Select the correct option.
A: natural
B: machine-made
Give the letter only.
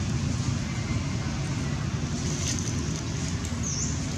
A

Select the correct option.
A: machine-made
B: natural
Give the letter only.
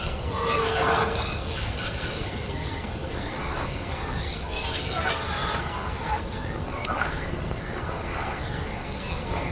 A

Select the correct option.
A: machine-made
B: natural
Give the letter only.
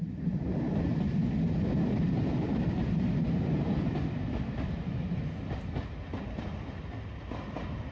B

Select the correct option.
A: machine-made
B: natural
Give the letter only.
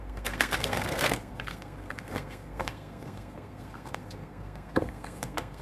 A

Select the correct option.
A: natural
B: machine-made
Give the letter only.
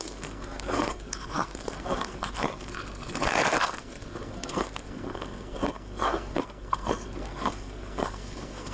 B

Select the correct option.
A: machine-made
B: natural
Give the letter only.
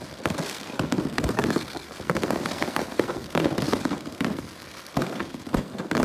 A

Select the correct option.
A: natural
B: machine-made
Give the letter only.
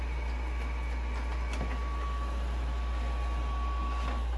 A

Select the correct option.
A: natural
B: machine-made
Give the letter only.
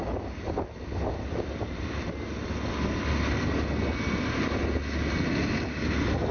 A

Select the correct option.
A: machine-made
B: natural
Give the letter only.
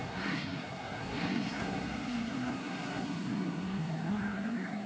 A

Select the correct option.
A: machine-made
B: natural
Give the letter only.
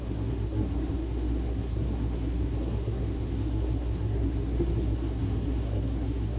A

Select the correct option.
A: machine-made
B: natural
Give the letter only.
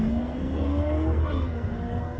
A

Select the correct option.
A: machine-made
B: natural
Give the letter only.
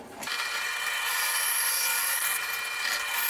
B